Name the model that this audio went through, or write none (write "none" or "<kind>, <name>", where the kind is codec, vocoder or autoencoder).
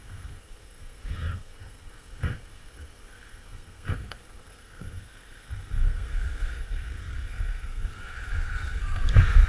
codec, SNAC